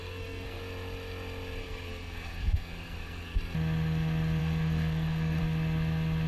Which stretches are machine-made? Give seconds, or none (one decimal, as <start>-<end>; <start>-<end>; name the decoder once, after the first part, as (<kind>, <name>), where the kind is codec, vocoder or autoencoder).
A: 0.0-0.6 (codec, SNAC); 1.6-3.4; 4.4-5.4